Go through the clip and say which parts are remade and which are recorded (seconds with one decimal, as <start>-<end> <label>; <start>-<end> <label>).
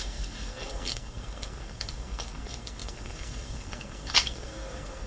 0.0-5.1 remade